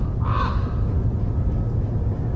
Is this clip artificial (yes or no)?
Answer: no